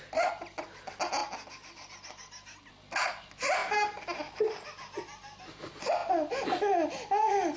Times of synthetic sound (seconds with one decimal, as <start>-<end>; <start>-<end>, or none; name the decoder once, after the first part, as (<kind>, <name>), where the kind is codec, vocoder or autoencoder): 3.6-4.2 (vocoder, BigVGAN v2)